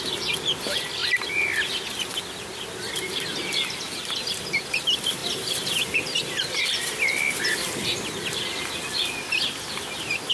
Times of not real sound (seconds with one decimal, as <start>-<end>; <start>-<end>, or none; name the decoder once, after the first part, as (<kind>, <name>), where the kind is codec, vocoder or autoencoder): none